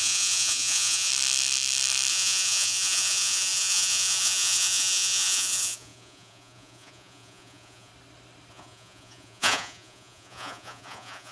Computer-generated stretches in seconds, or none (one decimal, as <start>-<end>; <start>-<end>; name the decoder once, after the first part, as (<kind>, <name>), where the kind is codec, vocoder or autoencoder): 0.0-1.1 (vocoder, Vocos); 2.1-7.9; 8.5-11.3

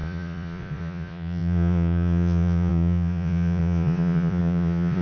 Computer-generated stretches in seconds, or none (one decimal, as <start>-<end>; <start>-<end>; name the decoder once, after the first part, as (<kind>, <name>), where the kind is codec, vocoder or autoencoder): 0.0-5.0 (vocoder, Vocos)